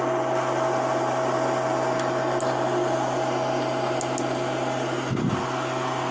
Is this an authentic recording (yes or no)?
yes